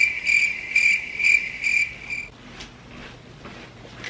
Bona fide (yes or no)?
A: yes